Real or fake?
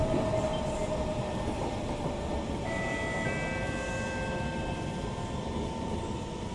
real